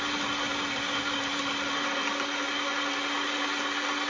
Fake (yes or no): no